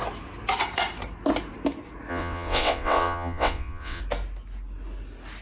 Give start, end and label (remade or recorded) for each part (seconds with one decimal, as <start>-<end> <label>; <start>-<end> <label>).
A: 0.0-2.1 recorded; 2.1-4.0 remade; 4.0-5.4 recorded

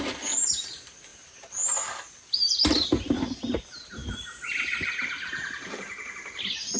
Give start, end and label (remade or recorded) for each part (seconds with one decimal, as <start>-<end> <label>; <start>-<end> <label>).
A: 0.0-6.8 recorded

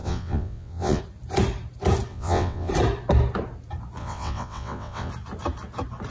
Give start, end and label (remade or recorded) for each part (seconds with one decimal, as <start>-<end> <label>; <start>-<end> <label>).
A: 0.0-1.0 remade; 1.0-2.1 recorded; 2.1-2.7 remade; 2.7-4.0 recorded; 4.0-5.1 remade; 5.1-6.1 recorded

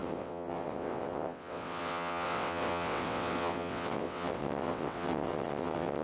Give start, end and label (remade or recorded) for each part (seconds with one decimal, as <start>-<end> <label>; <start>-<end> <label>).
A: 0.0-6.0 remade

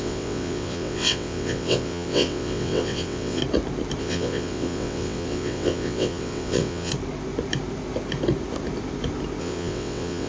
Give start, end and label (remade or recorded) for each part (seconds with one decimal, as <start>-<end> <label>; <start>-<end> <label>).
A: 0.0-3.4 remade; 3.4-4.0 recorded; 4.0-6.9 remade; 6.9-9.4 recorded; 9.4-10.3 remade

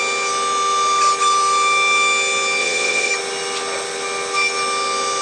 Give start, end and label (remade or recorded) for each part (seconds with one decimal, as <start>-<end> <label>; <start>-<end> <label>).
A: 0.0-2.6 recorded; 2.6-3.1 remade; 3.1-5.2 recorded

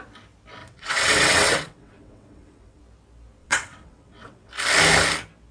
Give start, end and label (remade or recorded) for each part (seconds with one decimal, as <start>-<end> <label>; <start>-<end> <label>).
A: 0.0-0.6 recorded; 0.6-2.8 remade; 2.8-3.4 recorded; 3.4-4.5 remade; 4.5-5.5 recorded